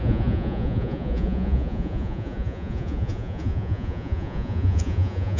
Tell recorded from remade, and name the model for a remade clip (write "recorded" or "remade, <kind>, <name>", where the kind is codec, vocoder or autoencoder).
remade, vocoder, Vocos